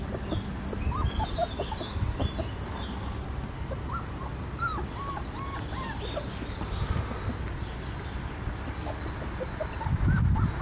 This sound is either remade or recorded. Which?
recorded